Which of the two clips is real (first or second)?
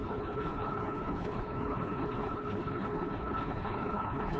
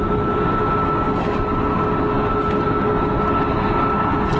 second